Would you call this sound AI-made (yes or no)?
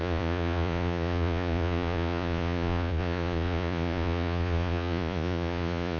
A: yes